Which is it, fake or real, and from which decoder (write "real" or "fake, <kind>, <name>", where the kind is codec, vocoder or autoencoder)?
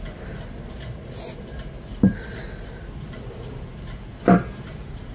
real